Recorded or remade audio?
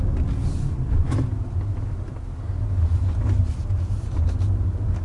recorded